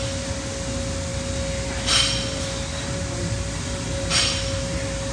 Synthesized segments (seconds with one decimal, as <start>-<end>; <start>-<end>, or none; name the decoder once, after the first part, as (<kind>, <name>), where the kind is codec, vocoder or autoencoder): none